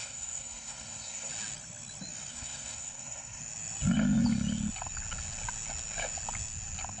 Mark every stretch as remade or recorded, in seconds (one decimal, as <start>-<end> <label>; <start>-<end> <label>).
0.0-1.3 remade; 1.3-2.3 recorded; 2.3-3.4 remade; 3.4-7.0 recorded